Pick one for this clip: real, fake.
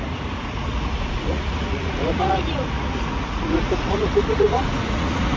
fake